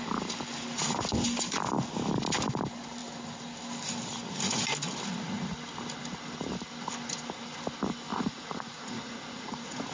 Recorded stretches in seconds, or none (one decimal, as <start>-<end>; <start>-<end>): 0.0-8.1